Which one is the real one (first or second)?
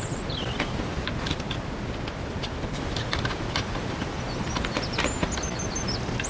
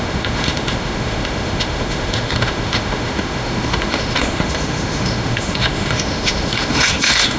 first